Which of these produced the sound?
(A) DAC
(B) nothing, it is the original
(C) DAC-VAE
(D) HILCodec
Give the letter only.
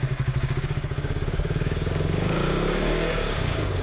A